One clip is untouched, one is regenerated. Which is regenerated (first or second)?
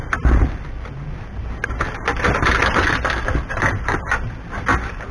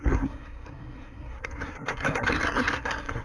second